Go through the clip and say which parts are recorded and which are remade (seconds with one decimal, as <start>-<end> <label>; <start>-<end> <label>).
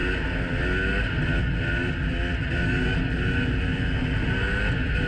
0.0-5.1 recorded